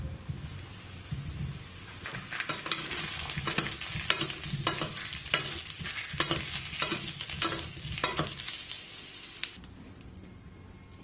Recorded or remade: recorded